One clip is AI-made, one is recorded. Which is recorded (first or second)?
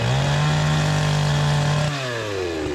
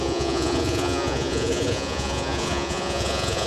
first